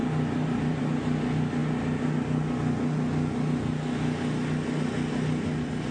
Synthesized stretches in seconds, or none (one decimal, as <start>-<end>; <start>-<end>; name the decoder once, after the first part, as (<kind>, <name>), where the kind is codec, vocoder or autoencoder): 0.0-0.8 (vocoder, BigVGAN v2)